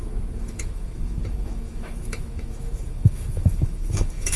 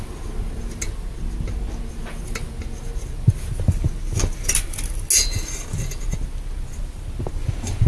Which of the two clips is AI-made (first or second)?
first